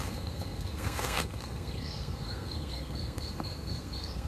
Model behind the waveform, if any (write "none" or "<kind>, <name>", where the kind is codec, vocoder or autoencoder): codec, SNAC